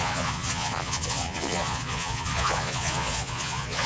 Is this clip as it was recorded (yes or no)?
no